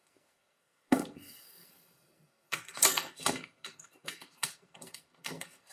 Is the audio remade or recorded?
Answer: remade